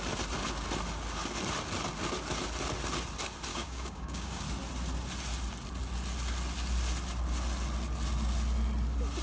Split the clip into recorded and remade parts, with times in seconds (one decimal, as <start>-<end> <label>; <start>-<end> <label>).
0.0-3.5 recorded; 3.5-4.4 remade; 4.4-9.2 recorded